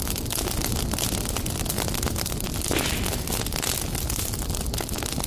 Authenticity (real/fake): real